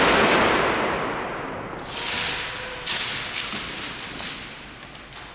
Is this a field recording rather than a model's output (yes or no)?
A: yes